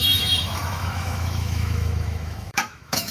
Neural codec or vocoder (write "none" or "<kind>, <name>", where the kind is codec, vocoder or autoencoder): autoencoder, DAC-VAE